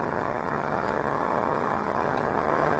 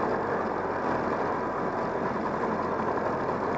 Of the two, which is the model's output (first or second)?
first